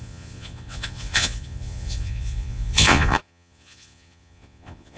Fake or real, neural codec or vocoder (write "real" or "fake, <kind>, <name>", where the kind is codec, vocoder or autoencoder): fake, vocoder, Vocos